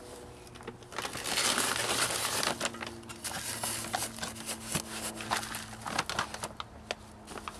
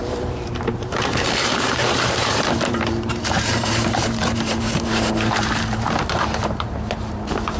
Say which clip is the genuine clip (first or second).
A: first